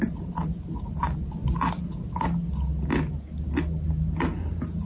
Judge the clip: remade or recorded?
recorded